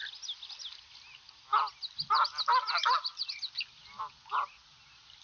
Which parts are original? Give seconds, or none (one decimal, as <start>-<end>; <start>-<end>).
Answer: 0.0-5.2